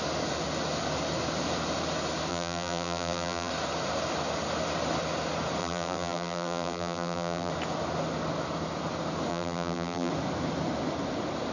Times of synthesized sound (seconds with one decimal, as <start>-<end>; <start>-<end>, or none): 2.3-3.5; 5.6-7.5; 9.3-10.1